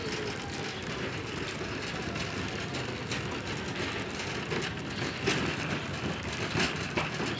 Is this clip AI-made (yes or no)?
no